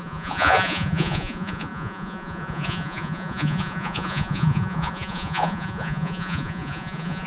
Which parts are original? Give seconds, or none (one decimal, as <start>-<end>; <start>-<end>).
none